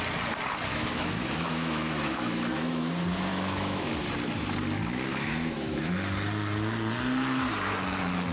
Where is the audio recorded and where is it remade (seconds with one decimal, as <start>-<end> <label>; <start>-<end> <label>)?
0.0-0.7 recorded; 0.7-2.9 remade; 2.9-3.3 recorded; 3.3-3.9 remade; 3.9-5.1 recorded; 5.1-5.9 remade; 5.9-8.3 recorded